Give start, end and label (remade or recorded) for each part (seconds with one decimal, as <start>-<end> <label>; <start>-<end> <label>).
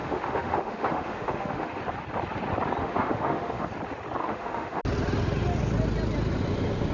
0.0-1.8 remade; 1.8-2.8 recorded; 2.8-3.7 remade; 3.7-4.2 recorded; 4.2-4.8 remade; 4.8-6.9 recorded